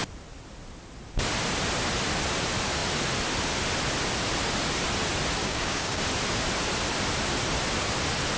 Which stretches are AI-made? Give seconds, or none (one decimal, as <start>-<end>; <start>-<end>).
5.4-6.0